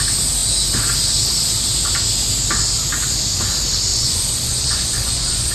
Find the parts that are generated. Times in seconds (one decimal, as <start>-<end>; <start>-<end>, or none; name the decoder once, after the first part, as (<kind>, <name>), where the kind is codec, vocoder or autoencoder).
3.9-5.5 (vocoder, Vocos)